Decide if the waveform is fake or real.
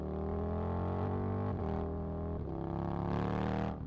real